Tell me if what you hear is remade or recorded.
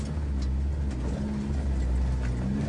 recorded